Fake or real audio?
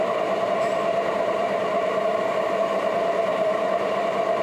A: fake